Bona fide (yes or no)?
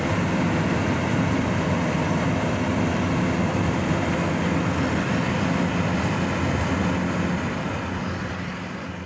yes